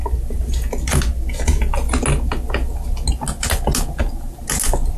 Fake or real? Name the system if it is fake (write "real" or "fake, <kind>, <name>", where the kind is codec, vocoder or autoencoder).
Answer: real